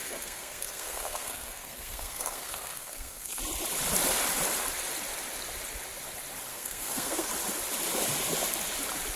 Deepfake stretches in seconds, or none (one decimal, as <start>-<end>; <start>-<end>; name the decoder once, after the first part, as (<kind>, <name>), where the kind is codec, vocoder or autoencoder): 0.0-3.4 (codec, SNAC); 6.5-7.3